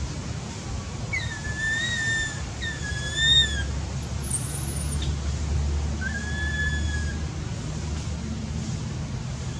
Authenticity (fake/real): real